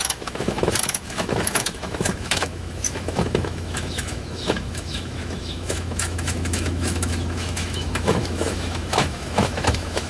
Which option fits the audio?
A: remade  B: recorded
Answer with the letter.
A